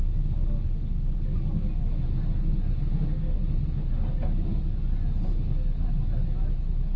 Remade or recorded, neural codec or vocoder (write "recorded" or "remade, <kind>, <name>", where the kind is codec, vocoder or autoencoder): recorded